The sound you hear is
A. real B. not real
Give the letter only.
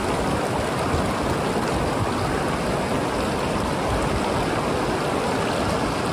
A